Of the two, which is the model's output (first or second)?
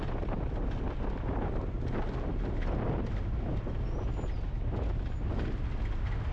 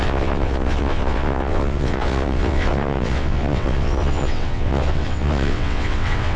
second